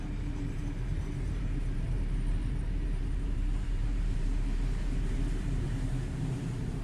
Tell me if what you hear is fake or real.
fake